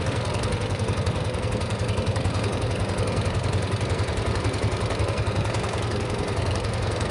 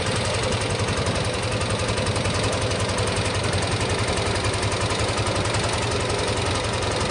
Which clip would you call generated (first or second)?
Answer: first